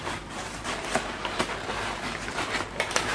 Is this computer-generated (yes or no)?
yes